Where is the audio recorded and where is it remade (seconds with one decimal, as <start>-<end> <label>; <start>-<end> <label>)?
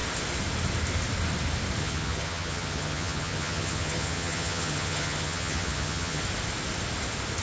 0.0-1.8 recorded; 1.8-6.2 remade; 6.2-7.4 recorded